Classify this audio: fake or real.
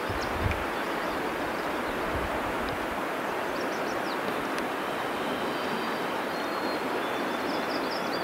real